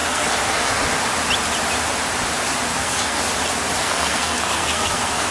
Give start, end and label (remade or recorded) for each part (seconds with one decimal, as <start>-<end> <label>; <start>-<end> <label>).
0.0-0.7 remade; 0.7-2.7 recorded; 2.7-3.2 remade; 3.2-3.8 recorded; 3.8-5.3 remade